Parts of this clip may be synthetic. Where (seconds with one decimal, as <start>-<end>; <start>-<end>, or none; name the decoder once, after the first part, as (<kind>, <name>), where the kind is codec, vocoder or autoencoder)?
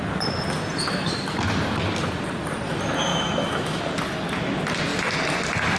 3.1-3.8 (autoencoder, DAC-VAE)